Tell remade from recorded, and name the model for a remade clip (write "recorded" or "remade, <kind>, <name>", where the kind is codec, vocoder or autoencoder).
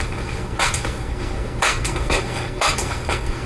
remade, codec, SNAC